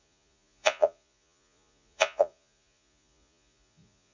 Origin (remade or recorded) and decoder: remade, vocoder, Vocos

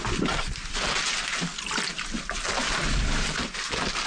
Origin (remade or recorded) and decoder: recorded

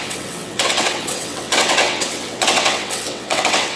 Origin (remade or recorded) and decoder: remade, vocoder, WaveNeXt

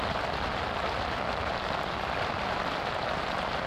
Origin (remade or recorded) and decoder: recorded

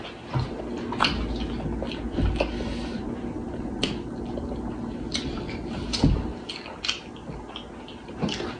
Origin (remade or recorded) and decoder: recorded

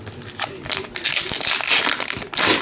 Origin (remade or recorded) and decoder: recorded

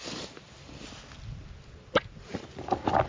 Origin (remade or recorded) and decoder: recorded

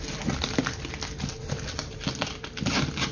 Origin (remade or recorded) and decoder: recorded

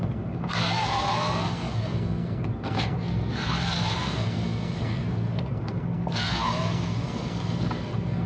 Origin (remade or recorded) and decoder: remade, codec, SNAC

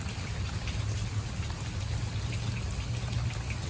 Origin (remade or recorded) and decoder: recorded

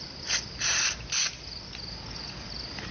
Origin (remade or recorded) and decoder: recorded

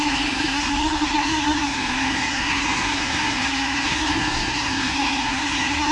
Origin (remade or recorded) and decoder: remade, codec, SNAC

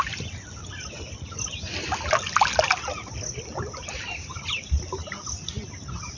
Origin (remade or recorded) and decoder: recorded